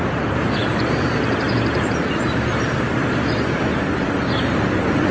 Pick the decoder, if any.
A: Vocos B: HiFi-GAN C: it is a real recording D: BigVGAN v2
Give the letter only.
D